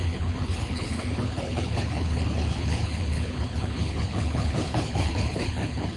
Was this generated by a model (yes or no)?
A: yes